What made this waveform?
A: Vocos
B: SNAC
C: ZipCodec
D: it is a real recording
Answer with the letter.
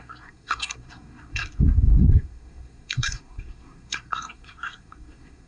B